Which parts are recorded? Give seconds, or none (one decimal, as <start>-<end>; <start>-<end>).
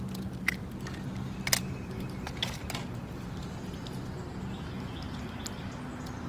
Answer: 0.0-6.3